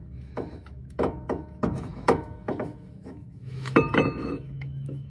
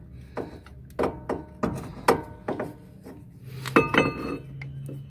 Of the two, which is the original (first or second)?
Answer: second